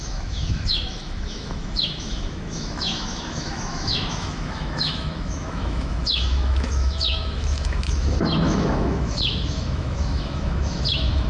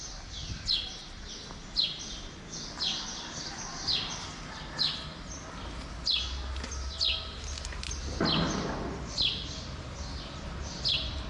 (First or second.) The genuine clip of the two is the second